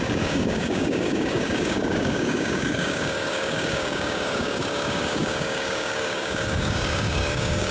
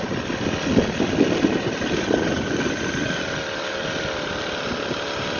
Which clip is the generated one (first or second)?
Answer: first